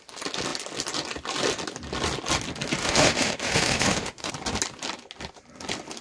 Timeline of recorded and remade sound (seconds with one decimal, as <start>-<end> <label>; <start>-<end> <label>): 0.0-2.8 recorded; 2.8-4.3 remade; 4.3-6.0 recorded